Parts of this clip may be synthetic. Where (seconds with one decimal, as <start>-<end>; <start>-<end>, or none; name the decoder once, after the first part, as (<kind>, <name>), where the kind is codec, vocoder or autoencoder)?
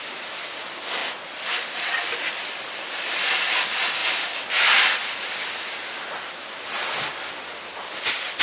4.0-4.8 (vocoder, BigVGAN v2)